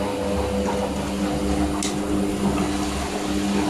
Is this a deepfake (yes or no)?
no